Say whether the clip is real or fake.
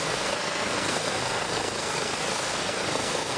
fake